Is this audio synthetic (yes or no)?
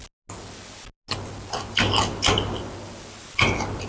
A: no